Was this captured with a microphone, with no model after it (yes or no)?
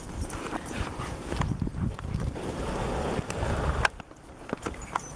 no